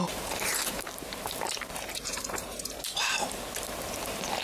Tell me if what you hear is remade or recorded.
remade